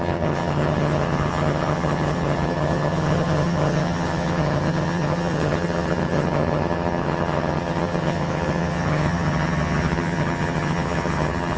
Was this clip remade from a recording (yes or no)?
yes